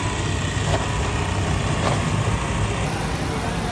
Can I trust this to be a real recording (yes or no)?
yes